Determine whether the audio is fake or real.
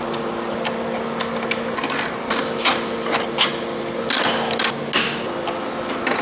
real